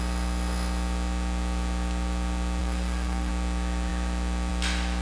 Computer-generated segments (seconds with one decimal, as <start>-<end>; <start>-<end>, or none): 2.6-3.3